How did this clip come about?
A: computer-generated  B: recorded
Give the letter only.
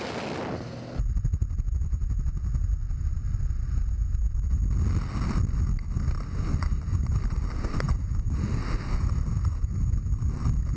B